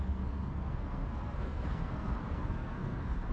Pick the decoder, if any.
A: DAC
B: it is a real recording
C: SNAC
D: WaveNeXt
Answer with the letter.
C